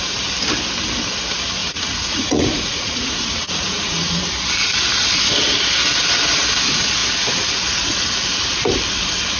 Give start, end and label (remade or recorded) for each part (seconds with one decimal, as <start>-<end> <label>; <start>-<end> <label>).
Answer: 0.0-1.6 recorded; 1.6-4.2 remade; 4.2-9.4 recorded